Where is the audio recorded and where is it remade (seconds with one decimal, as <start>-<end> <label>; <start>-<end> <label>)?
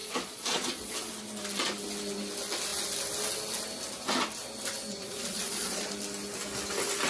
0.0-1.1 remade; 1.1-4.9 recorded; 4.9-5.9 remade; 5.9-7.1 recorded